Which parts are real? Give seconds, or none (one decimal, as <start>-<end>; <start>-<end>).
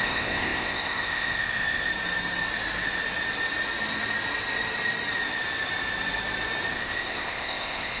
1.9-6.7